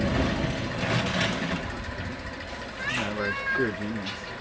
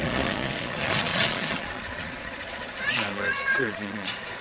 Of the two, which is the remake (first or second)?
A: second